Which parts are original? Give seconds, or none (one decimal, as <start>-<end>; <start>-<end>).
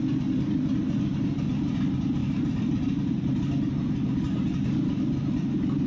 0.0-2.2; 3.3-5.9